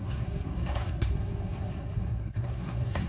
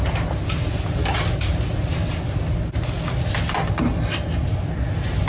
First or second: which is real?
second